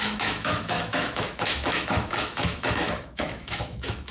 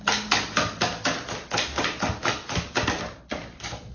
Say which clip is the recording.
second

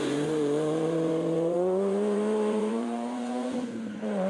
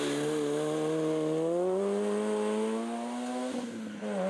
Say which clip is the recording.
second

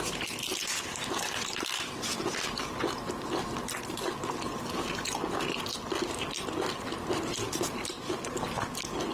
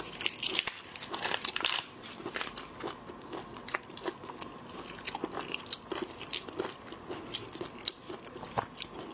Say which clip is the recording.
first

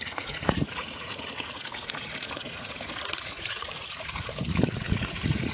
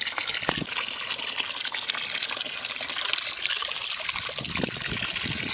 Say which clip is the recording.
second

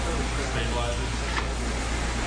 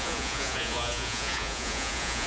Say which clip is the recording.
first